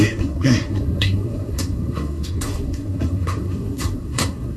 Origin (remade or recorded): remade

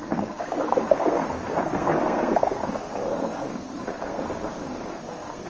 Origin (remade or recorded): remade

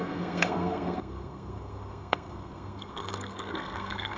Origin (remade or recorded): remade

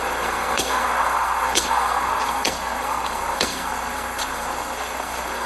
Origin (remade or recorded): remade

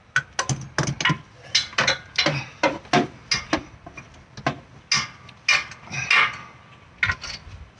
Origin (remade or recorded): recorded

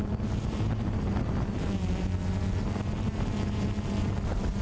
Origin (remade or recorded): recorded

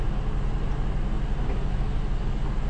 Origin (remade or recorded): recorded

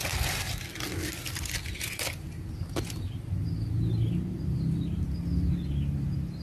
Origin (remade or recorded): recorded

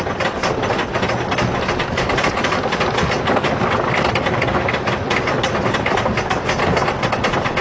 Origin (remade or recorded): recorded